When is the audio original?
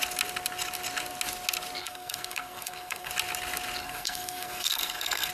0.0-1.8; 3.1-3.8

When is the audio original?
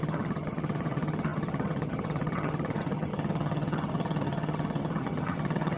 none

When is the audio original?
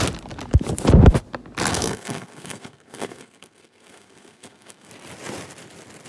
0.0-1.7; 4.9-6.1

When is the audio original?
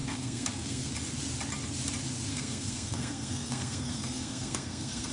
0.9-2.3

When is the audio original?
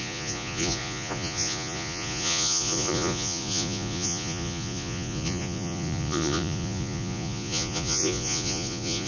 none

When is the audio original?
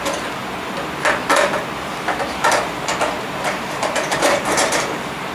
0.4-2.4; 2.9-3.4